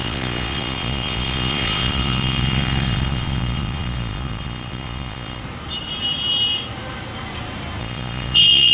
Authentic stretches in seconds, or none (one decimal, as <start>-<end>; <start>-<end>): 5.4-7.8